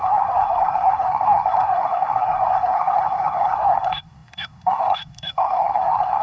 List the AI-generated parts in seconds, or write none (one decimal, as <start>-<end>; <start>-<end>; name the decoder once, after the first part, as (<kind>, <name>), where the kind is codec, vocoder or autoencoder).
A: 0.0-6.2 (codec, SNAC)